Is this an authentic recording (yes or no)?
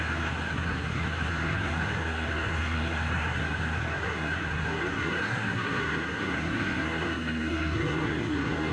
no